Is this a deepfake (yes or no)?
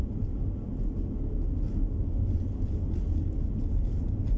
no